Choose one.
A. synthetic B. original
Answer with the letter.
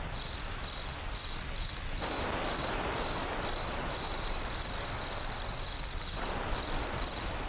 B